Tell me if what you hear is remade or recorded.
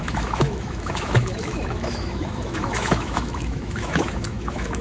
remade